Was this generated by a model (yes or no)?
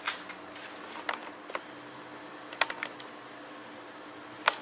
no